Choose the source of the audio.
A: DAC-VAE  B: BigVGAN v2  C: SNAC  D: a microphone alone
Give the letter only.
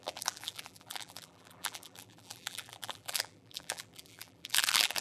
B